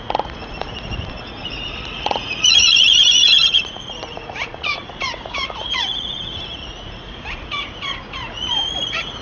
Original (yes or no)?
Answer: no